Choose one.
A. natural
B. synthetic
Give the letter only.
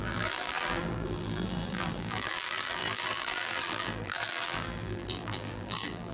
B